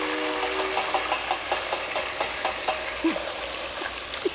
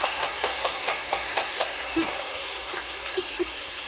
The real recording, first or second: first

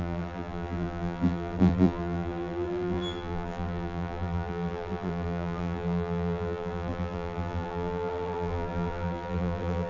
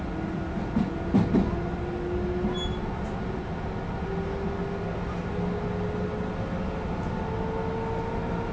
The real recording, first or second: second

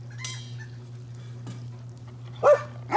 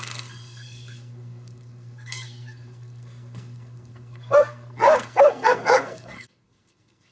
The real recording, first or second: first